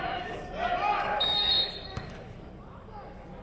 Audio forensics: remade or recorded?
remade